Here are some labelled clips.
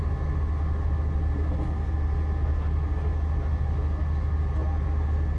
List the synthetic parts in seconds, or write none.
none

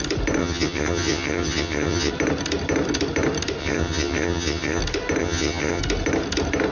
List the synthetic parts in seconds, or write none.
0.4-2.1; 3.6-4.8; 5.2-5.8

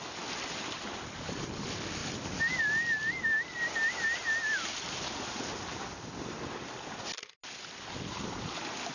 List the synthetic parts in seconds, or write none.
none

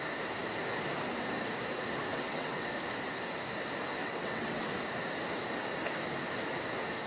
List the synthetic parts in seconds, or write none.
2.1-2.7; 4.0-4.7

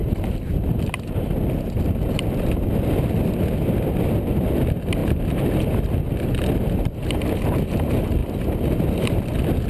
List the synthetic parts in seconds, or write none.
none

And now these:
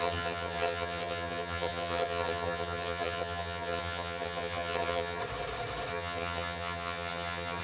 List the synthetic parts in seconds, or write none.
0.0-5.2; 5.9-7.6

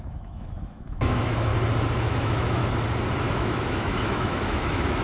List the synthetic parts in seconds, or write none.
0.0-1.5; 2.1-2.6; 3.3-5.0

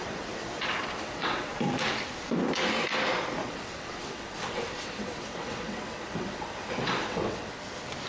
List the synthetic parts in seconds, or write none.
0.0-1.5; 3.4-7.5